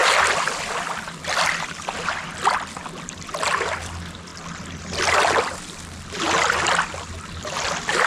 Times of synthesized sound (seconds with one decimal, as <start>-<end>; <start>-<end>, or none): none